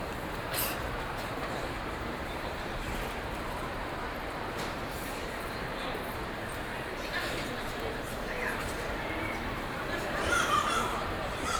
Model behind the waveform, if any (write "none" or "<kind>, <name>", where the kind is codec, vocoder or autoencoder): vocoder, BigVGAN v2